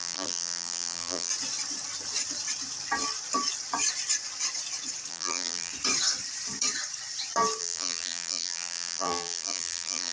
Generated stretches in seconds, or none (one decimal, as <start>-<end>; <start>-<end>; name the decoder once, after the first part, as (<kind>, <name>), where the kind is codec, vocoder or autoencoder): 0.0-1.3 (vocoder, BigVGAN v2); 5.1-5.7; 7.6-10.1